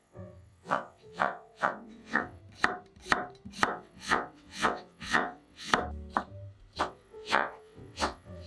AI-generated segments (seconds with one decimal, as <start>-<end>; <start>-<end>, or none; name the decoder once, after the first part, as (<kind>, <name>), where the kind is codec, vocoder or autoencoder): 0.0-2.4 (vocoder, WaveNeXt); 3.7-5.7; 6.8-8.5